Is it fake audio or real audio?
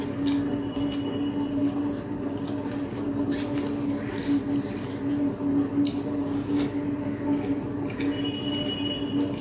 real